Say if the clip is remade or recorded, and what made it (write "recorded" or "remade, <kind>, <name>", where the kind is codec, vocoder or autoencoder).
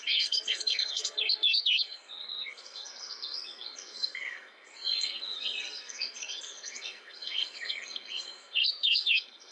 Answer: remade, codec, SNAC